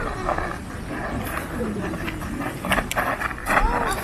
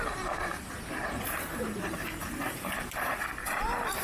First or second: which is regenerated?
second